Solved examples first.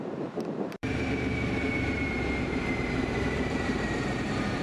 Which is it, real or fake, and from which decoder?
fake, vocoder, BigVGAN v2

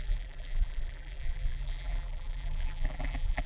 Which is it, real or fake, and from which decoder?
fake, vocoder, BigVGAN v2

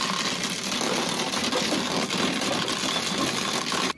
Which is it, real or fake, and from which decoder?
real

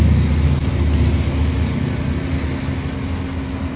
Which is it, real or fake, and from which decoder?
real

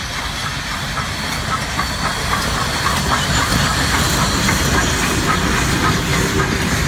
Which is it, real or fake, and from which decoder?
real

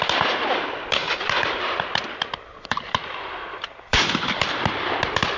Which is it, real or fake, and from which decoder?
fake, vocoder, BigVGAN v2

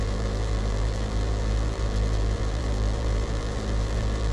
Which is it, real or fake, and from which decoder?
fake, vocoder, BigVGAN v2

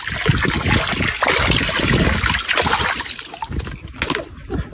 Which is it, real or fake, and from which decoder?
real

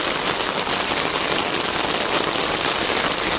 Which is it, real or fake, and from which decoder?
real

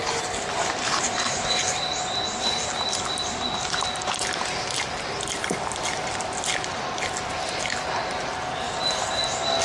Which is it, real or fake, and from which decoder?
real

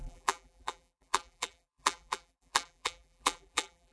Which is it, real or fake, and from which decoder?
fake, vocoder, BigVGAN v2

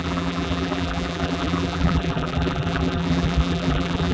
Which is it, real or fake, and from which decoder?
fake, vocoder, BigVGAN v2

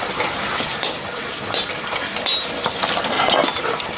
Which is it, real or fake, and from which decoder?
fake, vocoder, BigVGAN v2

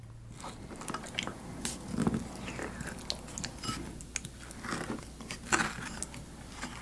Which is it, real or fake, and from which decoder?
real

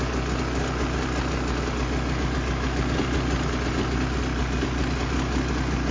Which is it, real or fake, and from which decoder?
real